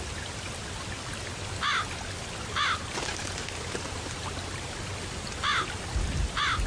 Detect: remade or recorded recorded